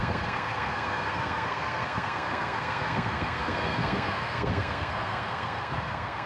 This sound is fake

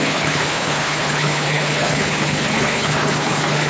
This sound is fake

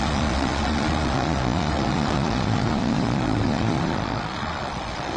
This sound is fake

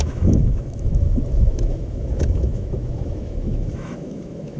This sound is fake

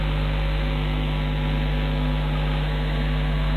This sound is fake